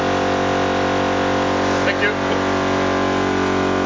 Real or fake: real